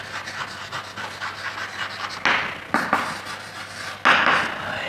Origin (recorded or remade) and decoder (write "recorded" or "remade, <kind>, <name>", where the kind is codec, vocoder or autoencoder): recorded